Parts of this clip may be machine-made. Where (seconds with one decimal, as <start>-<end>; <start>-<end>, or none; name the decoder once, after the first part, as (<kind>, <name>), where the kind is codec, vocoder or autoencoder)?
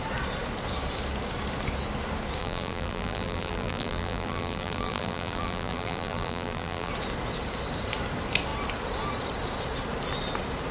2.4-6.9 (vocoder, BigVGAN v2)